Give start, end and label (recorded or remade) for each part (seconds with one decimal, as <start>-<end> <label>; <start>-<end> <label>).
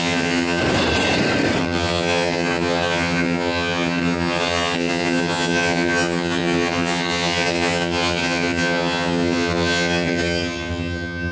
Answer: 0.0-0.6 remade; 0.6-1.6 recorded; 1.6-11.3 remade